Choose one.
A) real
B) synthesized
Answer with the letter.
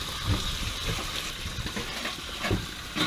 A